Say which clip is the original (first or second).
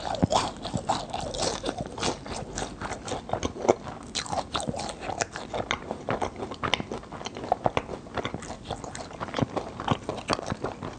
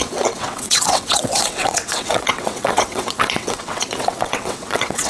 first